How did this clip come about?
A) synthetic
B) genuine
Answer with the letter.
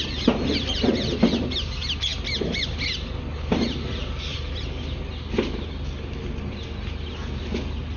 B